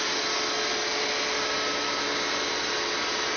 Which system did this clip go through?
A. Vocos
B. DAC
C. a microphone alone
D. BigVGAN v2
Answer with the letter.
C